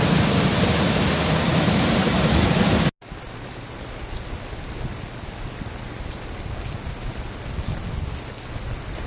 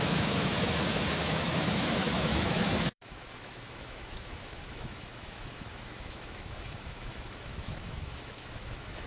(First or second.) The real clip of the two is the first